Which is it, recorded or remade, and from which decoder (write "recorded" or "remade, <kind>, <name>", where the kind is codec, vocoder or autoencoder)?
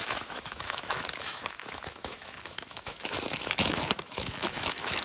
remade, autoencoder, DAC-VAE